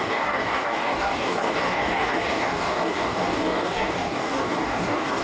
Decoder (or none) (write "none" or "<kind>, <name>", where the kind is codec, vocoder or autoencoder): codec, DAC